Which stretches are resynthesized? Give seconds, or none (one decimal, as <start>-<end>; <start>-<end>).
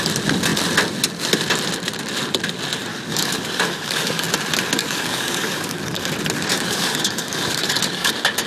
2.9-4.2; 4.8-6.1; 6.5-8.1